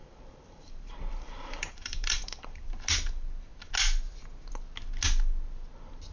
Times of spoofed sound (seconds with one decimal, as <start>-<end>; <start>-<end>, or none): 0.0-2.7